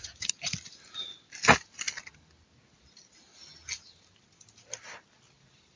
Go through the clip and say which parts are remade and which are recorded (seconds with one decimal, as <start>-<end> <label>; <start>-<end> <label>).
0.0-5.8 recorded